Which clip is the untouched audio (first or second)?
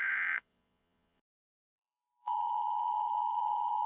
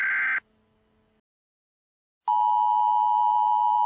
second